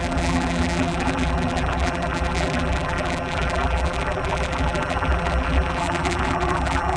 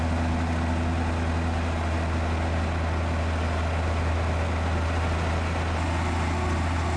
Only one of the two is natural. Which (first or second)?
second